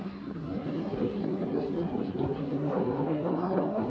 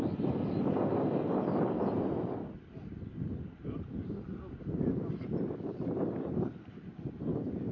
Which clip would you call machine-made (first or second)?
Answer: first